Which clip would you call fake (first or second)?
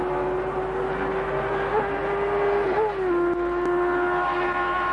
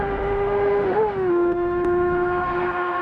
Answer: second